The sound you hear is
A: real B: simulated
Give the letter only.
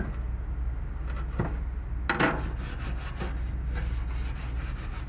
A